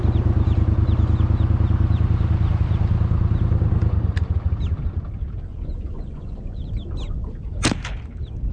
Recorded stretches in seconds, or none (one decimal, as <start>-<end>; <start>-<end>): 0.0-5.5; 6.7-8.5